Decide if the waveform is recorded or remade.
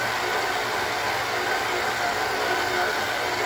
recorded